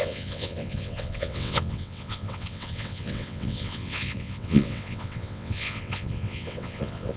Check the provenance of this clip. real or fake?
fake